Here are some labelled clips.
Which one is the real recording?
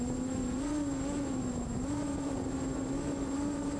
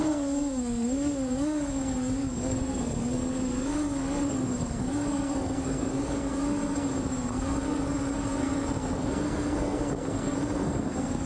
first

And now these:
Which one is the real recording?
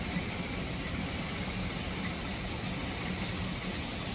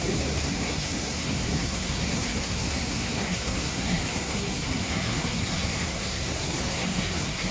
first